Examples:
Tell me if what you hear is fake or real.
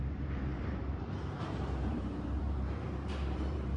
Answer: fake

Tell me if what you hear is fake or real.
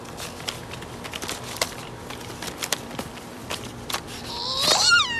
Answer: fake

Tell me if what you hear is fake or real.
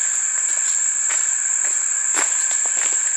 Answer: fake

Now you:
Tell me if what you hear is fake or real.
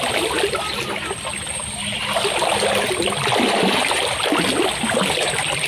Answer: real